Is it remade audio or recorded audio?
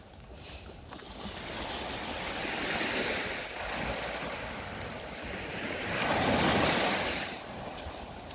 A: recorded